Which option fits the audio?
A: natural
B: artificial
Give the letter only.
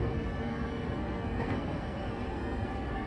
B